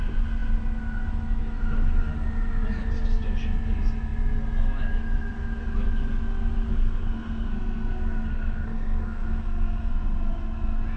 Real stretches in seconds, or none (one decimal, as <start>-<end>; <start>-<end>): 0.0-6.7; 9.9-11.0